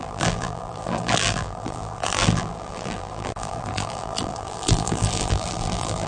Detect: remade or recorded remade